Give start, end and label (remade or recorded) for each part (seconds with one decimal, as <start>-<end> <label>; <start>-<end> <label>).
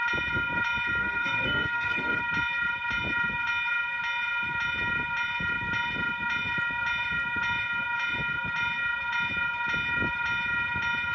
0.0-1.0 recorded; 1.0-2.2 remade; 2.2-11.1 recorded